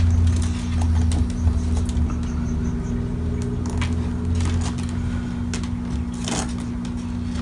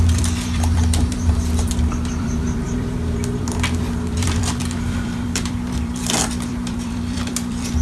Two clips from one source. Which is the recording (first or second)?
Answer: first